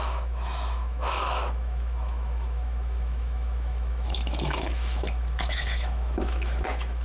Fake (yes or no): yes